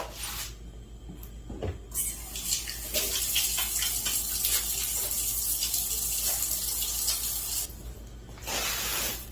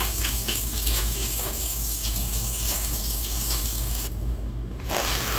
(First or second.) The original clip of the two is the first